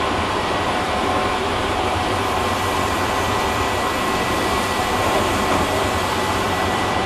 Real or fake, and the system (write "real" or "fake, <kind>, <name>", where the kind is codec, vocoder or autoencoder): fake, vocoder, BigVGAN v2